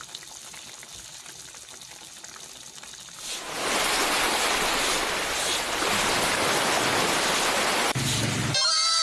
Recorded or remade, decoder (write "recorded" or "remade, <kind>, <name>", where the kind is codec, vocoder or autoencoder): recorded